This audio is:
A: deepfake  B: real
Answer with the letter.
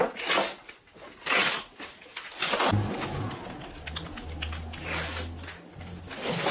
B